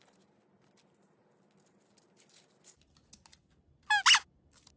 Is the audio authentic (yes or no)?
yes